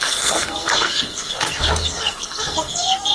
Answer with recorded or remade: remade